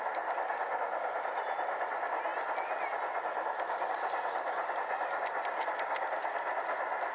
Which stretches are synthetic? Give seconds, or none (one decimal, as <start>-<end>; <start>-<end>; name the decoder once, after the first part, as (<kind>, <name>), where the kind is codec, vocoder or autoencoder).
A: none